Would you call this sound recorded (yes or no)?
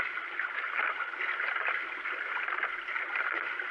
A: yes